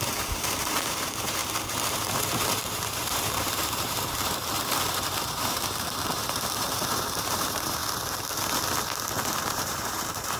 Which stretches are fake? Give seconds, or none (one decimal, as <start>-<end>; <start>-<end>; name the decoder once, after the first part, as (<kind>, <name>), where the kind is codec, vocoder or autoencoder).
0.0-1.4 (vocoder, BigVGAN v2); 1.9-7.8; 9.4-10.4